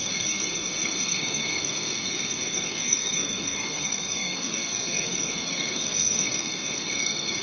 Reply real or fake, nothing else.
fake